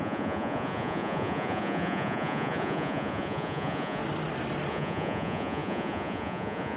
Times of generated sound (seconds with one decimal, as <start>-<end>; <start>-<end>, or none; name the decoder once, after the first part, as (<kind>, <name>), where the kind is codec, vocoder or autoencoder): 0.0-4.0 (vocoder, Vocos); 4.7-6.8